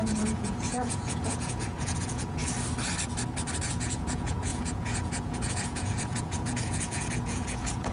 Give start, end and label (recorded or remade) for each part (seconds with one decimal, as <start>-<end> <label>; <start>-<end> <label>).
0.0-2.4 remade; 2.4-3.7 recorded; 3.7-7.9 remade

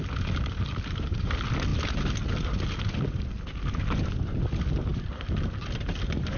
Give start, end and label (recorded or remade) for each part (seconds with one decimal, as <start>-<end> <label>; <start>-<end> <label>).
0.0-6.4 recorded

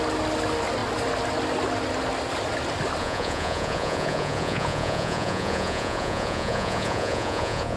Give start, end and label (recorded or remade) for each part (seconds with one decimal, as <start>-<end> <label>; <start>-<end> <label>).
0.0-3.0 recorded; 3.0-7.8 remade

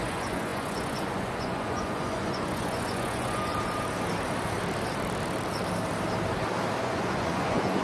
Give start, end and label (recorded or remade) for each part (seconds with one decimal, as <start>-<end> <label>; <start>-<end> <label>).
0.0-3.5 remade; 3.5-6.8 recorded; 6.8-7.8 remade

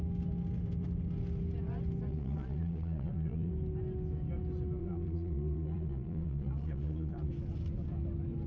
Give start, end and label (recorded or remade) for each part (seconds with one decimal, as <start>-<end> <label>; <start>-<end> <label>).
0.0-2.1 recorded; 2.1-3.5 remade; 3.5-4.8 recorded; 4.8-7.3 remade; 7.3-8.5 recorded

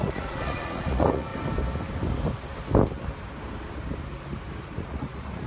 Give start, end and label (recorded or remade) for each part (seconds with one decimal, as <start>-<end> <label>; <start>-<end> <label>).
0.0-1.3 remade; 1.3-4.6 recorded; 4.6-5.5 remade

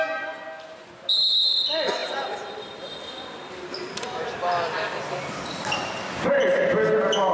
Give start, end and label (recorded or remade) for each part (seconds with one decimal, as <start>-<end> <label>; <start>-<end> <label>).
0.0-7.3 recorded